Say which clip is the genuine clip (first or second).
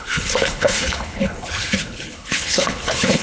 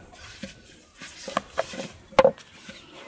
second